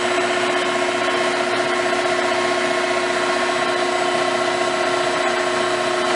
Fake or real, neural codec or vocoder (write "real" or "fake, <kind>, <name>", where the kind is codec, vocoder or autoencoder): real